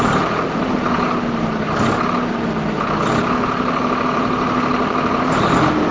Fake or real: real